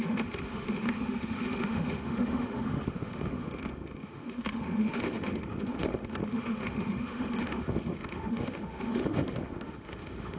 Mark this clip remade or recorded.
remade